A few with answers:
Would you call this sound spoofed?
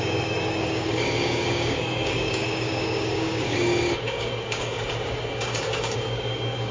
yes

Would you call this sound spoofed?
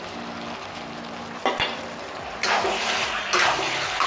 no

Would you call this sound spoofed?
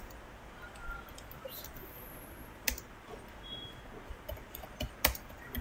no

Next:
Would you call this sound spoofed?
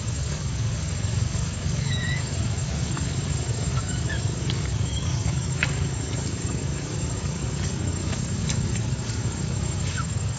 yes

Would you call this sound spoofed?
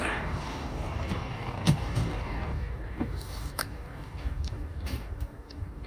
yes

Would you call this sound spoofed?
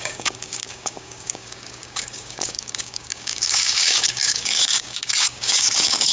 yes